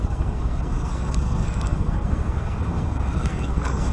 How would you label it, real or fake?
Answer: fake